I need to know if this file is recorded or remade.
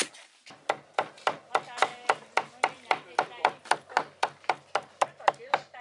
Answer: recorded